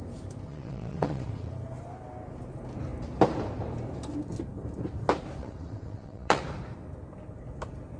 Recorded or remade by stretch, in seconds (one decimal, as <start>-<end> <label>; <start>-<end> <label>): 0.0-0.5 recorded; 0.5-1.5 remade; 1.5-5.4 recorded; 5.4-6.4 remade; 6.4-8.0 recorded